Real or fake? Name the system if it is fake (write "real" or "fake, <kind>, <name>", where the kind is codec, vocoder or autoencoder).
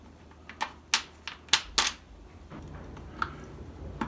real